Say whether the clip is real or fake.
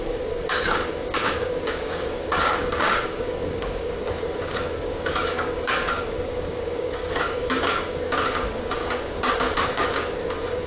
fake